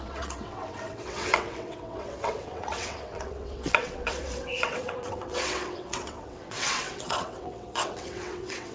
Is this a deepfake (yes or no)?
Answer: yes